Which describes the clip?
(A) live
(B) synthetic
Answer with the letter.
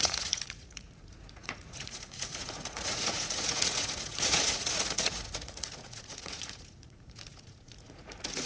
B